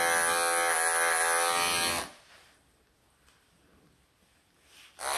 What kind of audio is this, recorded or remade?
recorded